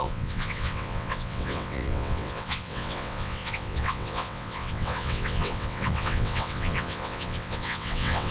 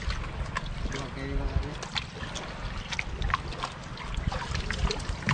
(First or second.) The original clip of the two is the second